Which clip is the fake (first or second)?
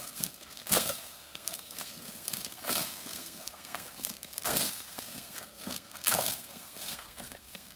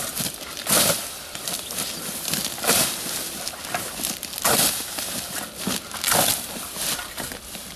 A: first